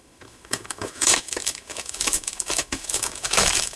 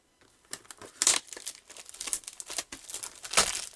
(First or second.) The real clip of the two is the second